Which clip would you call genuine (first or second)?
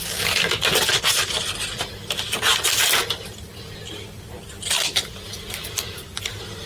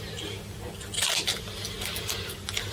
second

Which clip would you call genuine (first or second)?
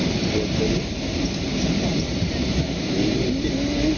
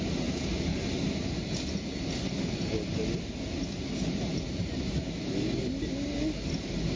second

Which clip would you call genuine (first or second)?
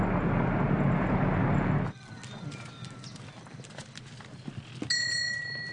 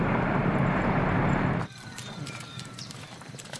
first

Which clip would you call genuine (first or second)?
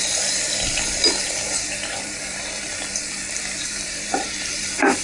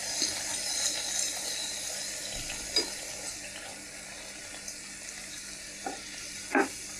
second